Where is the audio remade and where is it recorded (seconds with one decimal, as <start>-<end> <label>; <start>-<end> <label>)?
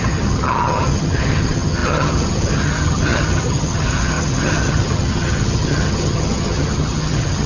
0.0-7.5 remade